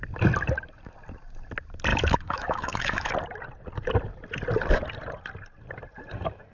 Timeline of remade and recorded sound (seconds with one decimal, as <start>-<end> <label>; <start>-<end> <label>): 0.0-1.9 recorded; 1.9-3.1 remade; 3.1-6.5 recorded